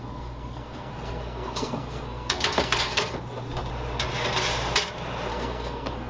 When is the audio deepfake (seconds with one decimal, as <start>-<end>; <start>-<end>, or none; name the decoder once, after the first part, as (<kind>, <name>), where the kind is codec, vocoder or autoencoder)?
0.0-3.2 (codec, SNAC); 5.3-6.1